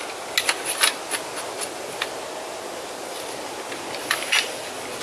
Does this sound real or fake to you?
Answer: real